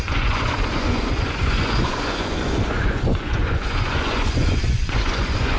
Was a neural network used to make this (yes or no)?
yes